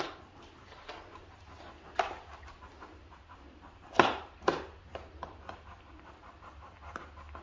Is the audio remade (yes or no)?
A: no